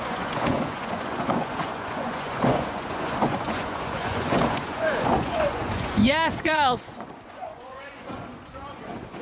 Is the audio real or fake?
fake